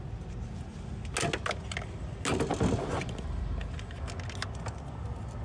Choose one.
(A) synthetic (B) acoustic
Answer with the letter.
B